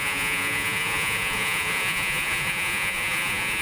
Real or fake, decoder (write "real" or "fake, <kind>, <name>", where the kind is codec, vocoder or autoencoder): fake, vocoder, Vocos